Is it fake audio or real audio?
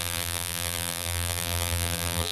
fake